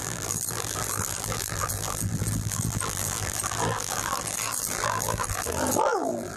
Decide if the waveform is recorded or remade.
remade